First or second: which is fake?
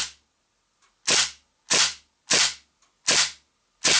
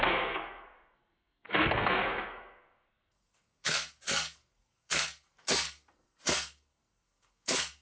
second